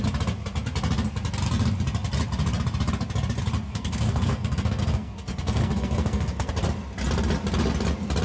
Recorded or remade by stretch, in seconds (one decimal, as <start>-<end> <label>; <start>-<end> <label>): 0.0-3.7 recorded; 3.7-6.5 remade; 6.5-8.2 recorded